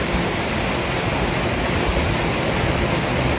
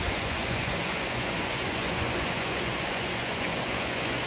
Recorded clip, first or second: first